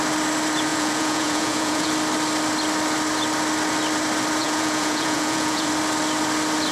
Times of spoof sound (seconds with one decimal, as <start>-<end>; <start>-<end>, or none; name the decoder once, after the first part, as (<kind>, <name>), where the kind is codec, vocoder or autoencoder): 0.7-1.9 (vocoder, Vocos); 4.4-5.7